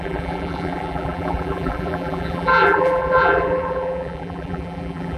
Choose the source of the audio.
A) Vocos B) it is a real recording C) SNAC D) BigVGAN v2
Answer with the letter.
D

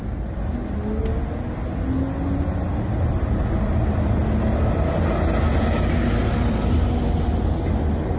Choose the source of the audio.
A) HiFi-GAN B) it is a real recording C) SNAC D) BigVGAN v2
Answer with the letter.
B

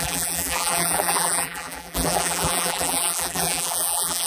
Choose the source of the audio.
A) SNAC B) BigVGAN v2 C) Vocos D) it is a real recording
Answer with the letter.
B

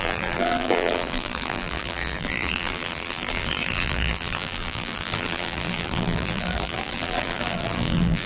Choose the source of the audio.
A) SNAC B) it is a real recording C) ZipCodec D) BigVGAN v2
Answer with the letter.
D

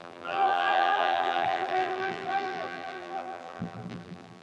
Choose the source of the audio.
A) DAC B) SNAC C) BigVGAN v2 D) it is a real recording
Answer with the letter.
C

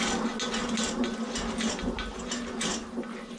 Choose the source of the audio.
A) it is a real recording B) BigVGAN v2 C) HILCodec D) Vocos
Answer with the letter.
A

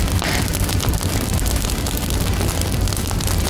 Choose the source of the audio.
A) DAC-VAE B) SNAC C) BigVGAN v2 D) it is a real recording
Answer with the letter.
D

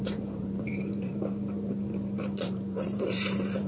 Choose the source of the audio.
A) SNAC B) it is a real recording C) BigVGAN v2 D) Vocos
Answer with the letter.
C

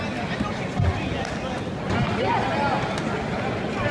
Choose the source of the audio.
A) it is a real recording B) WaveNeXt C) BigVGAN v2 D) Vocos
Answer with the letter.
A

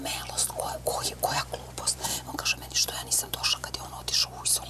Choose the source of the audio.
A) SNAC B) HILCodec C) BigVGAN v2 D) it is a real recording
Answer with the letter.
C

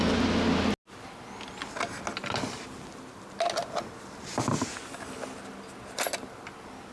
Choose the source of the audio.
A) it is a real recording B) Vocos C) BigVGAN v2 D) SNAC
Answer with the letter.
A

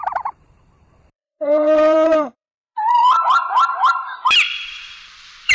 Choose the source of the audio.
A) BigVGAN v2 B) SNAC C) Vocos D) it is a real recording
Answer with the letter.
A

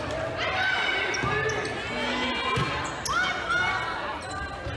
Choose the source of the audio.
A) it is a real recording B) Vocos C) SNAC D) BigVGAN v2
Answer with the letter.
A